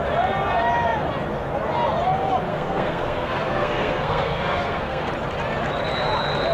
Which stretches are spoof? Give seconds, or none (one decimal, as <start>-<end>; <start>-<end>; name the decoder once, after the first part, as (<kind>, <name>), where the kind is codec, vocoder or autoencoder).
2.5-5.1 (codec, SNAC)